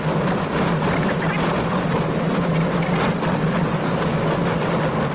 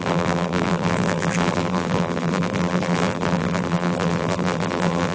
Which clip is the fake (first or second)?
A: second